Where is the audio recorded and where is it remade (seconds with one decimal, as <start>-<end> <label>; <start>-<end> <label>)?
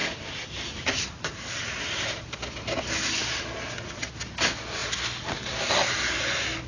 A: 0.0-3.2 remade; 3.2-6.7 recorded